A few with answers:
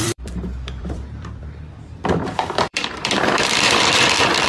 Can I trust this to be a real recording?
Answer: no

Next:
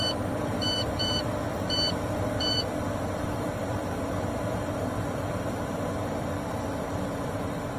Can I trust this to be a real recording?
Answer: no